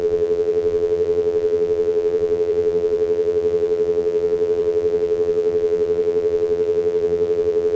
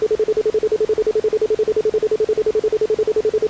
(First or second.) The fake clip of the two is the first